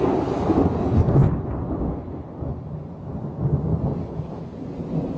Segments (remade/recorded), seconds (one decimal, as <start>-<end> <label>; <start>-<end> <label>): 0.0-5.2 recorded